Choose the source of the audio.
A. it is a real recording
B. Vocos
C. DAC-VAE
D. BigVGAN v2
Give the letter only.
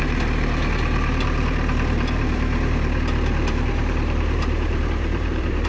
D